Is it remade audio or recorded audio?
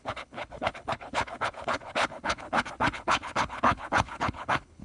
remade